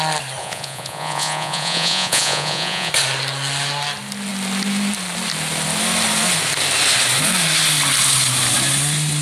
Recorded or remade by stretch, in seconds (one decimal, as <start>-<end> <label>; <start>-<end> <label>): 0.0-0.4 recorded; 0.4-2.9 remade; 2.9-9.2 recorded

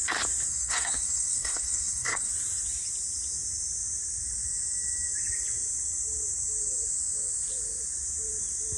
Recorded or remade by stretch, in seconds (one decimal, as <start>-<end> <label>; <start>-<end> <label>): 0.0-0.5 recorded; 0.5-2.3 remade; 2.3-8.8 recorded